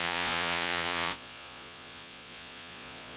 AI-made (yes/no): yes